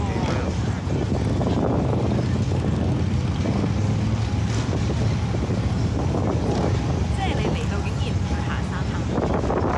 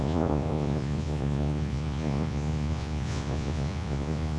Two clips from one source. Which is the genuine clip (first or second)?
first